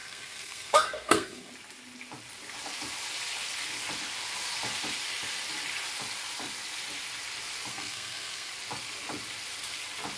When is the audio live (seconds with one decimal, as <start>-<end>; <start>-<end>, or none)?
1.5-7.7; 8.5-10.2